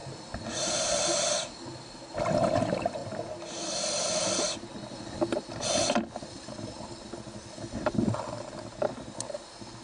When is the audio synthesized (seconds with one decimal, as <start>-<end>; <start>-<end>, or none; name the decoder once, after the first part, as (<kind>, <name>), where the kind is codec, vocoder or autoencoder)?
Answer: none